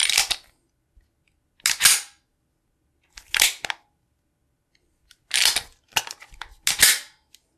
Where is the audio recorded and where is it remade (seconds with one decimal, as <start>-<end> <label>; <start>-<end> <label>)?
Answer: 0.0-7.6 recorded